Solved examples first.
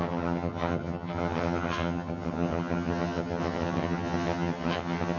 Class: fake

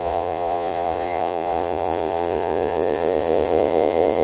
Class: fake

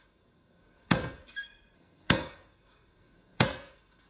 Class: fake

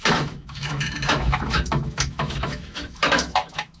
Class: fake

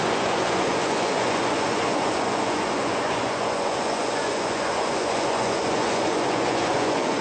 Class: fake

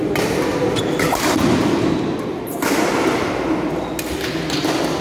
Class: real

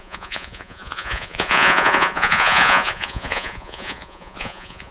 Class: fake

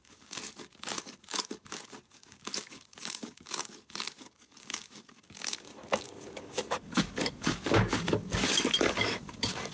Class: fake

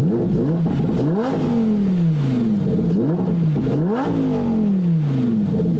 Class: real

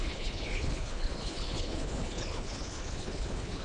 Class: fake